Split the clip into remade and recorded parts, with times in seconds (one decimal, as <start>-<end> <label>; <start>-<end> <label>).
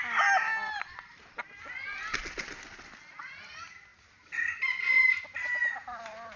0.0-6.4 recorded